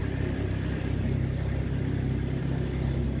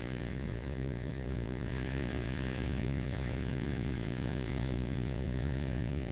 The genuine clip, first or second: first